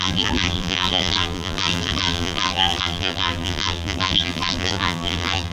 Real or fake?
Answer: fake